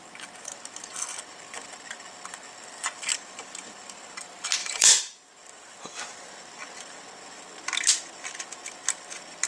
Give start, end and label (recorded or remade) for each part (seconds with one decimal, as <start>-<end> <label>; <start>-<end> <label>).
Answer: 0.0-4.6 recorded; 4.6-5.3 remade; 5.3-9.5 recorded